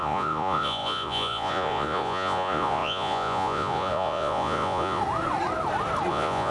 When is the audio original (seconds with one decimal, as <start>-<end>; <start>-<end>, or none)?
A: 5.0-6.1